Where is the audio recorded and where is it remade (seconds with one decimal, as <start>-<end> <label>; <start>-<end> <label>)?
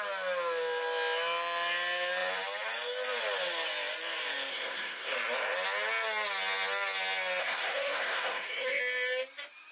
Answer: 0.0-4.5 recorded; 4.5-5.1 remade; 5.1-7.4 recorded; 7.4-8.8 remade; 8.8-9.7 recorded